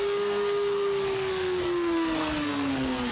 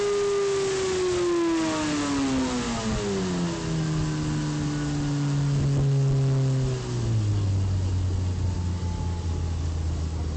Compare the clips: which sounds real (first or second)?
second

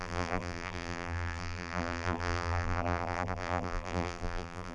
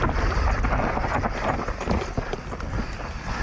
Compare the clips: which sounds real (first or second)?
second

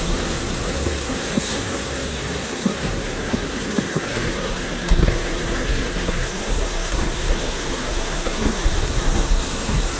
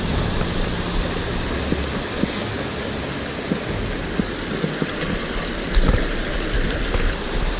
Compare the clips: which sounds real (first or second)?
second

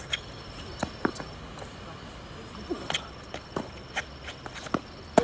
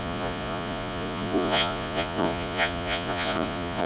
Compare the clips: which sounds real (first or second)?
first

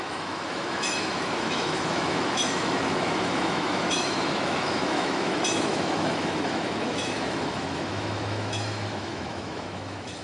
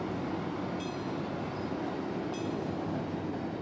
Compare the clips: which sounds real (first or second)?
second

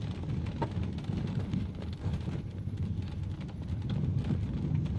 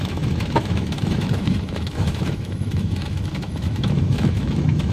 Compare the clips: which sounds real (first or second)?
first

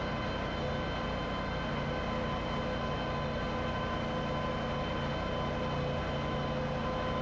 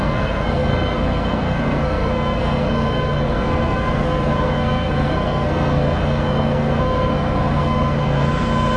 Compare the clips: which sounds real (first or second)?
first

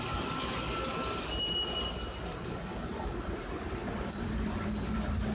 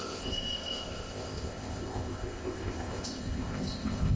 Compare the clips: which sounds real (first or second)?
first